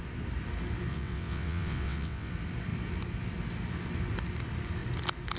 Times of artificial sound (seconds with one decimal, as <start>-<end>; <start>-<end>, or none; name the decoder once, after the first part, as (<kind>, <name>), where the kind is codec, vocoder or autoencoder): 0.9-2.3 (vocoder, WaveNeXt)

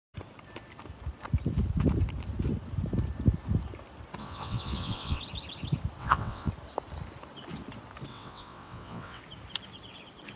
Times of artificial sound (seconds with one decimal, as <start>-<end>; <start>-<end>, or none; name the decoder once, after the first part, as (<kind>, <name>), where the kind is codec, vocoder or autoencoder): 4.2-5.2 (vocoder, WaveNeXt); 6.0-6.5; 8.1-9.2

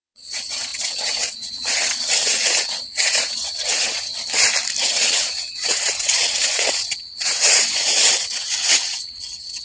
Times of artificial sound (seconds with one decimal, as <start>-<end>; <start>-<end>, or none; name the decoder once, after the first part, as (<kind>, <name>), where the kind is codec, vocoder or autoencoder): 0.0-4.1 (vocoder, WaveNeXt); 4.8-9.6

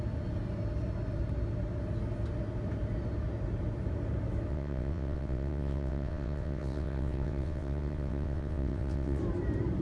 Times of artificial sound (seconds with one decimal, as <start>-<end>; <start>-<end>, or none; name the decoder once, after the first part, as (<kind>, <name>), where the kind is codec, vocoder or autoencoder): 4.5-9.2 (vocoder, WaveNeXt)

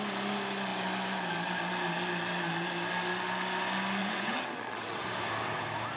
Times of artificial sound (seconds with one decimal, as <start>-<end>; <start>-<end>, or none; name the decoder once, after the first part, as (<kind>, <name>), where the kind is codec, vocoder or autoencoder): 4.0-5.0 (vocoder, WaveNeXt)

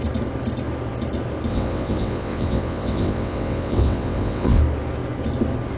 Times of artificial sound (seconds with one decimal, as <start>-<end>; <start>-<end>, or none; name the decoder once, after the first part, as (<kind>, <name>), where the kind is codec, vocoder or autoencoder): 1.5-4.6 (vocoder, WaveNeXt)